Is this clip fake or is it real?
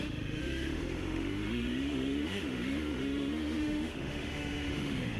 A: fake